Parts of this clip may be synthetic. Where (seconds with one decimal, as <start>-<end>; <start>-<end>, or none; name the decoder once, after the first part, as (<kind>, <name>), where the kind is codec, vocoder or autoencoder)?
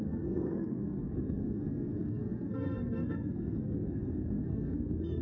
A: 0.0-5.2 (codec, SNAC)